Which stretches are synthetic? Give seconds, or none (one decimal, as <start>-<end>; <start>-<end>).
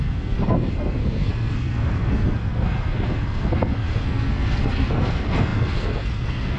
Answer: 0.0-6.6